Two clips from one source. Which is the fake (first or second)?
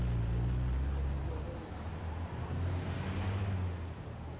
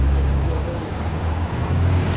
second